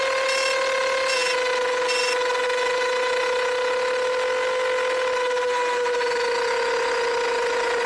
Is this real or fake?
real